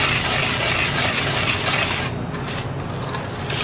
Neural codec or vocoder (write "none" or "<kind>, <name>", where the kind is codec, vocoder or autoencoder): none